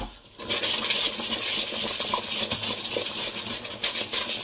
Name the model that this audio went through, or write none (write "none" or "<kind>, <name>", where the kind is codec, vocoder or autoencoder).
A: none